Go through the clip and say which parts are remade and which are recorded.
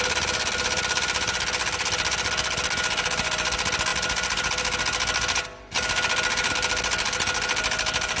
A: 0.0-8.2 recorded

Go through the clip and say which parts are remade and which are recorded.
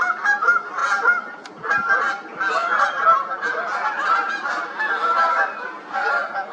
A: 0.0-6.5 recorded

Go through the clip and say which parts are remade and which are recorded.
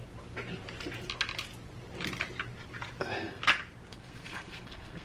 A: 0.0-3.0 recorded; 3.0-3.4 remade; 3.4-3.9 recorded; 3.9-5.0 remade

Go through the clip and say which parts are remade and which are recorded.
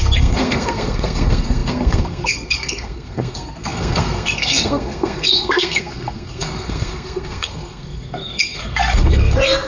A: 0.0-9.7 remade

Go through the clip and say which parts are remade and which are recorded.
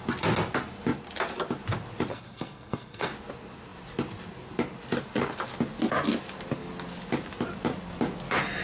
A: 0.0-2.1 recorded; 2.1-3.1 remade; 3.1-8.6 recorded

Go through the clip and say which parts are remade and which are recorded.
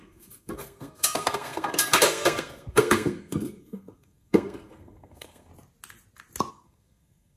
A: 0.0-5.5 remade; 5.5-6.5 recorded; 6.5-7.4 remade